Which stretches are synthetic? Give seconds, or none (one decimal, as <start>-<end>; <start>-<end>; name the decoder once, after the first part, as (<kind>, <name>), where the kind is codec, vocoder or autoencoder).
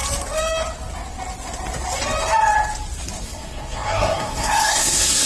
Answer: 3.2-5.3 (codec, SNAC)